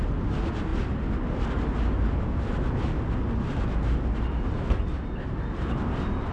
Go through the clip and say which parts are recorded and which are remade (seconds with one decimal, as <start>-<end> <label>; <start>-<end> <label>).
0.0-6.3 recorded